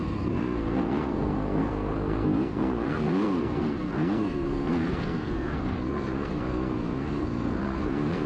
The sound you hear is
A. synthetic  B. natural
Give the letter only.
A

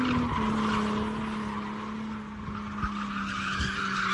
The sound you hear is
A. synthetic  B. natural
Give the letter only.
B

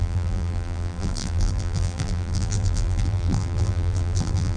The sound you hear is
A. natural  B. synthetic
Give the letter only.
B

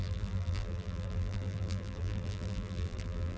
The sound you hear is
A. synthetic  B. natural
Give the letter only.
A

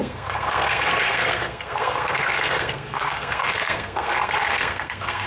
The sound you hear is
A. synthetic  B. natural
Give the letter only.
A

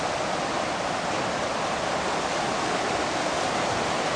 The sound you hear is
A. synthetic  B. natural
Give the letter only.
B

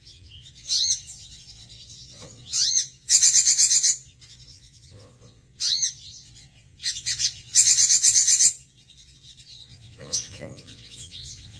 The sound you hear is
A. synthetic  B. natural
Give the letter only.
A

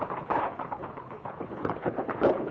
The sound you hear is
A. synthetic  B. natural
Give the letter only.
A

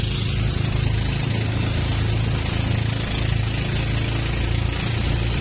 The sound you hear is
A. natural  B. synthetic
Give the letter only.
A